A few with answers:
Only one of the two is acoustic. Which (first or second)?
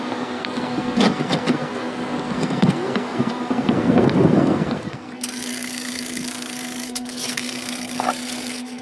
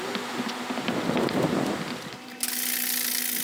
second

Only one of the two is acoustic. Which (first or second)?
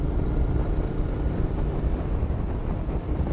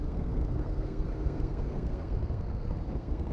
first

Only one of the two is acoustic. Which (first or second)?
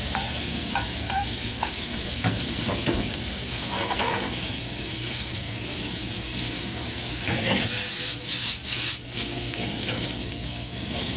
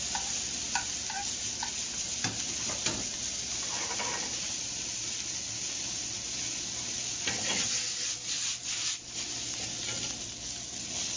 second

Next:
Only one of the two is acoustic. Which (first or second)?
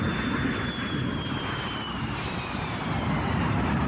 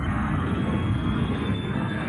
first